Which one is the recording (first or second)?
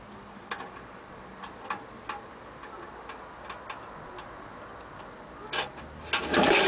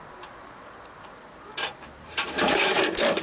first